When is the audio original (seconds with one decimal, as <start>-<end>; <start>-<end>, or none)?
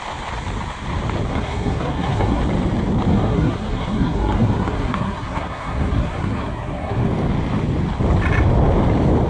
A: 0.0-1.3; 2.4-3.1; 7.1-9.3